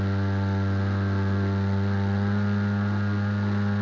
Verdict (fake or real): real